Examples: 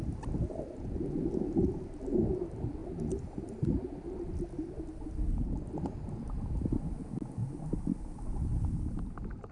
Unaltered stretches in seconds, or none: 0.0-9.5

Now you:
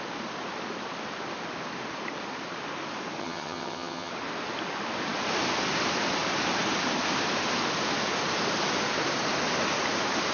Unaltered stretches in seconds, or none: 0.0-3.2; 4.1-10.3

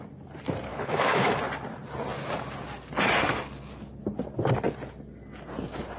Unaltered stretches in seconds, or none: 0.0-0.7; 1.4-6.0

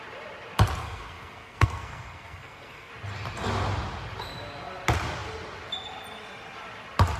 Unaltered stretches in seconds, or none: 0.0-0.8; 2.9-7.2